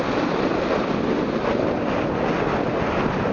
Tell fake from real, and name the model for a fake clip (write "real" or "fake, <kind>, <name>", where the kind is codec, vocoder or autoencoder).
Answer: real